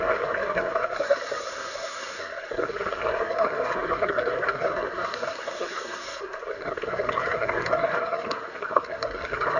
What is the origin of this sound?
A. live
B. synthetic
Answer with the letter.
B